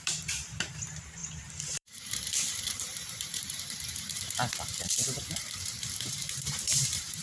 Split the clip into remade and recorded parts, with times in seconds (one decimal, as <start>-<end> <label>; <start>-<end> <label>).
0.0-7.2 remade